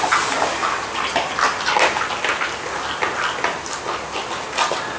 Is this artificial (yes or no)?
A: no